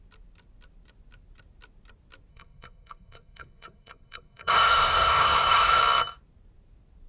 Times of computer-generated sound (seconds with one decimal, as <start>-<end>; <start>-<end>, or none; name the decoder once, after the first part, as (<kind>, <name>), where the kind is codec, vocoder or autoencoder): 2.3-5.8 (codec, SNAC)